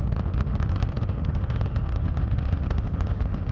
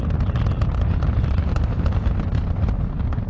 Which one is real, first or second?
second